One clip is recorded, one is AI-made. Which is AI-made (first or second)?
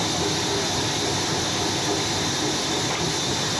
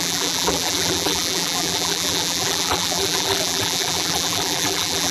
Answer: second